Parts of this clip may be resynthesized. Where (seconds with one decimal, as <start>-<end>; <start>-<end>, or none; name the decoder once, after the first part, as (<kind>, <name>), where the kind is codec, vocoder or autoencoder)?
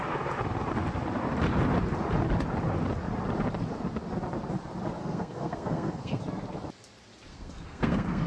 5.0-6.2 (codec, SNAC); 7.3-8.3